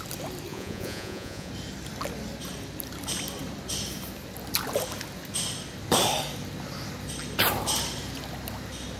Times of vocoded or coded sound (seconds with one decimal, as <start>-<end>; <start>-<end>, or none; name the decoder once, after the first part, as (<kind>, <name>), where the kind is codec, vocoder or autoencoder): 0.5-1.5 (vocoder, Vocos)